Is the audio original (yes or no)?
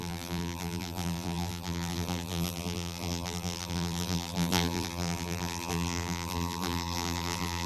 no